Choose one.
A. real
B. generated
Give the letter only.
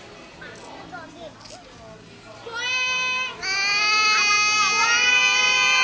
A